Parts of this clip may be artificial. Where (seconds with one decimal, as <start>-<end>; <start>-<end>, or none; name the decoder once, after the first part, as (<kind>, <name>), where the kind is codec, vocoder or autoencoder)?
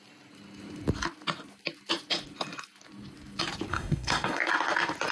3.7-4.4 (codec, SNAC)